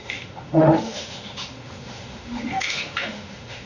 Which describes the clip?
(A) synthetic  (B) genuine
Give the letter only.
A